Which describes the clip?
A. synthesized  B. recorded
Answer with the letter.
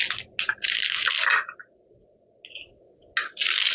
B